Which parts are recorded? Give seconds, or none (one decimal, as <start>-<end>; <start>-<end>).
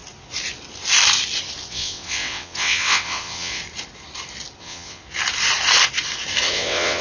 0.0-1.7; 3.6-4.6; 5.0-6.5